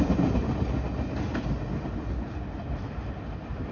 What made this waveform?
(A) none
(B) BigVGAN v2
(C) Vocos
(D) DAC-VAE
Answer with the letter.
A